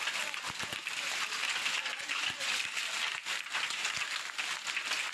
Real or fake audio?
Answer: real